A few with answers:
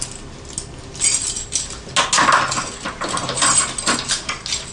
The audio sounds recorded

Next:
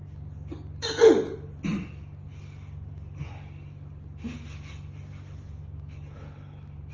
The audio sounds recorded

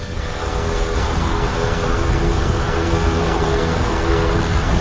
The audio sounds remade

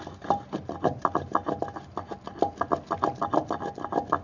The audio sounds recorded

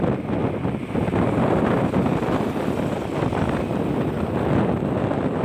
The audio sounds recorded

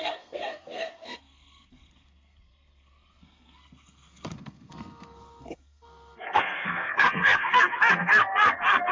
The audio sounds remade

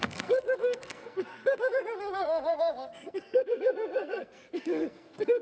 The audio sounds remade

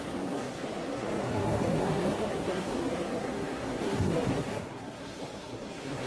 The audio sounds remade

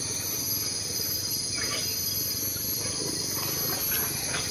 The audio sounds recorded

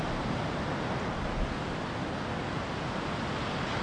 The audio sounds recorded